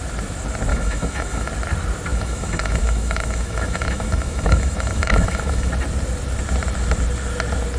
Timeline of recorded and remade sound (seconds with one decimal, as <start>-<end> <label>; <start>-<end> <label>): 0.0-0.7 recorded; 0.7-1.5 remade; 1.5-2.1 recorded; 2.1-5.7 remade; 5.7-7.8 recorded